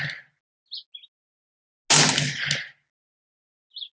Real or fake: real